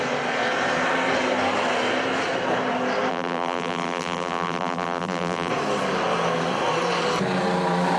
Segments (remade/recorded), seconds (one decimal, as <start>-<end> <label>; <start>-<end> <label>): 0.0-3.1 recorded; 3.1-5.5 remade; 5.5-8.0 recorded